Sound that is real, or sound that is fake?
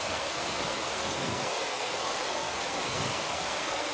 fake